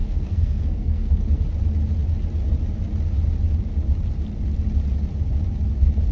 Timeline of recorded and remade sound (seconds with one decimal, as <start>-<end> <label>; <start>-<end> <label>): 0.0-1.4 remade; 1.4-6.1 recorded